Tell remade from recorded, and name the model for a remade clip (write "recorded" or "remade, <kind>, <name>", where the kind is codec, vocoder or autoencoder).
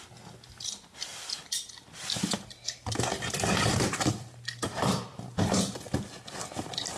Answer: recorded